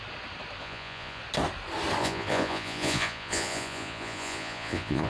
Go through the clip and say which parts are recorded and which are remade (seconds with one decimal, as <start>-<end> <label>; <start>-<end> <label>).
0.0-0.6 recorded; 0.6-1.2 remade; 1.2-2.0 recorded; 2.0-5.1 remade